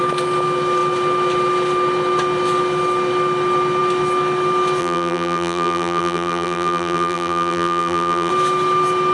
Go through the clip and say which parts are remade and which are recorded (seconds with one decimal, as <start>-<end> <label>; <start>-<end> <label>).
0.0-4.8 recorded; 4.8-8.3 remade; 8.3-9.1 recorded